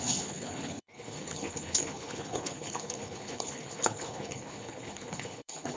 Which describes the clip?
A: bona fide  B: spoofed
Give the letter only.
B